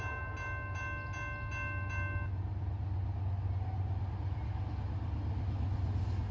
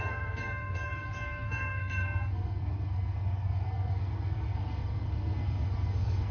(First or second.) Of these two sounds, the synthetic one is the second